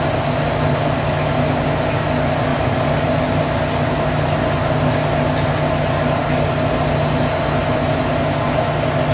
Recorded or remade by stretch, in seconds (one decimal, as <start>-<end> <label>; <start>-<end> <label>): 0.0-2.5 recorded; 2.5-3.4 remade; 3.4-9.1 recorded